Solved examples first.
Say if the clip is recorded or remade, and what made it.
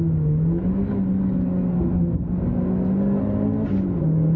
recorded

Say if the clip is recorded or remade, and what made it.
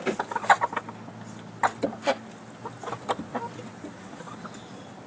recorded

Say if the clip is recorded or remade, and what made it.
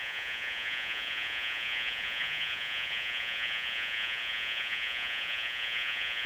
remade, vocoder, Vocos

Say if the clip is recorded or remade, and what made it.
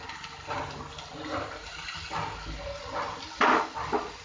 recorded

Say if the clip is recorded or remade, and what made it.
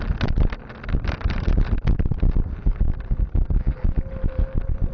recorded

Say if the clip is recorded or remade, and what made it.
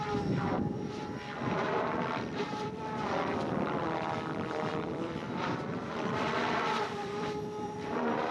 remade, vocoder, BigVGAN v2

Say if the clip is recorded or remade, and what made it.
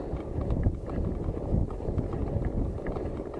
recorded